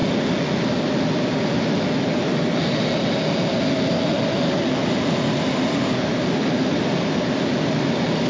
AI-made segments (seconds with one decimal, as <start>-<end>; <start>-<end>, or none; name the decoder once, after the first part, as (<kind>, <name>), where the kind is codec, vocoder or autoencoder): 4.8-8.3 (vocoder, BigVGAN v2)

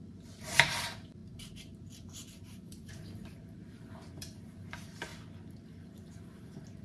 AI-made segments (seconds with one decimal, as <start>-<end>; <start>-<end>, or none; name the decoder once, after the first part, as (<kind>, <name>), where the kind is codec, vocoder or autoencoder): 0.0-5.1 (vocoder, BigVGAN v2); 5.6-6.8

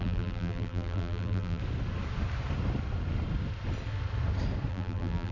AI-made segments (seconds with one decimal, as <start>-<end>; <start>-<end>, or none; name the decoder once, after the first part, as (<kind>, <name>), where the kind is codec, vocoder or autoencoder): 0.0-1.6 (vocoder, BigVGAN v2); 4.7-5.3

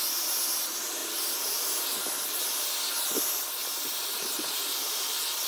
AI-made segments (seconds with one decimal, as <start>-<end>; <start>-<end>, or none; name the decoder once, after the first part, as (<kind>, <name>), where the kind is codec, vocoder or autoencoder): 3.6-5.0 (vocoder, BigVGAN v2)

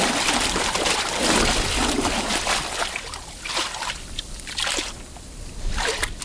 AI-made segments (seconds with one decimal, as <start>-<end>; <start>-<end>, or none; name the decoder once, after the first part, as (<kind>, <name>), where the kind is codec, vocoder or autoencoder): 1.8-2.4 (vocoder, BigVGAN v2)